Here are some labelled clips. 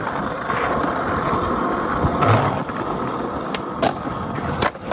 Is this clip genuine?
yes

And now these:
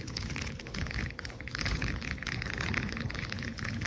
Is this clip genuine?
no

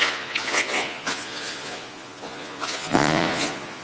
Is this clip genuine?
no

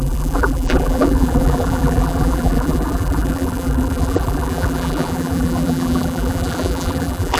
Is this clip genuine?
no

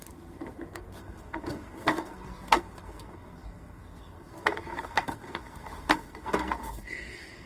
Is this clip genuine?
no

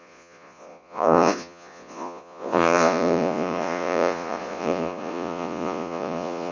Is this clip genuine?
no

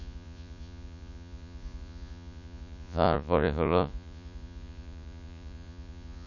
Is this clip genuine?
no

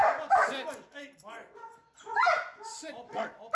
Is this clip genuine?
yes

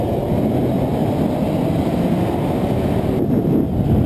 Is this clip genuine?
yes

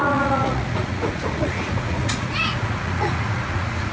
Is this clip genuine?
no